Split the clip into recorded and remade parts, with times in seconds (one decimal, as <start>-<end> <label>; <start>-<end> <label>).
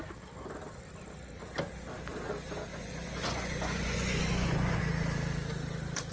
0.0-2.7 recorded; 2.7-4.8 remade; 4.8-6.1 recorded